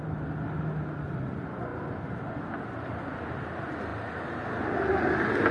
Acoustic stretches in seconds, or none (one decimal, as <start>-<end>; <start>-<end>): 0.0-5.5